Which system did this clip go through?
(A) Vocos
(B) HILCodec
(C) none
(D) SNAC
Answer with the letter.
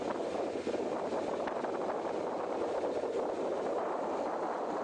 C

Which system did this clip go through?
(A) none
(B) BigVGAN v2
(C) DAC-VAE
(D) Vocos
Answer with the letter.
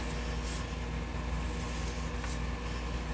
A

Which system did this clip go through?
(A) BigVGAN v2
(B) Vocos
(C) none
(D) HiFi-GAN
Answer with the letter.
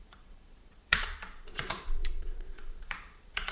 B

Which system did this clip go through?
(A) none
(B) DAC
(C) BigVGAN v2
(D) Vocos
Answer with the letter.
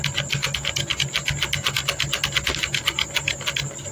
A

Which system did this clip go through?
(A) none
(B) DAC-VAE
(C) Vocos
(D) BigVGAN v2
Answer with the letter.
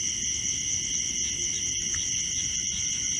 A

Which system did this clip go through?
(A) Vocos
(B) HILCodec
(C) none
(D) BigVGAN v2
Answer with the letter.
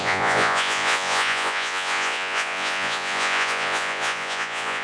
A